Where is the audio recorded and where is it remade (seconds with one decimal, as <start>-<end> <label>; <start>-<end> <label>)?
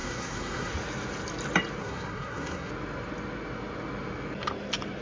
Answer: 0.0-0.7 remade; 0.7-1.8 recorded; 1.8-2.7 remade; 2.7-5.0 recorded